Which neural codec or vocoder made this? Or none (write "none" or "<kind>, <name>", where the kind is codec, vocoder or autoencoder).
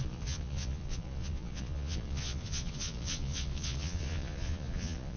vocoder, Vocos